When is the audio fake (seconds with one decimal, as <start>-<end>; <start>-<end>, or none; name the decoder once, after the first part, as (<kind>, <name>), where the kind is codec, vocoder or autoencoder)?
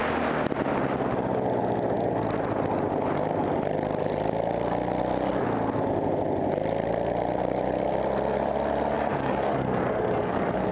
9.1-10.7 (codec, DAC)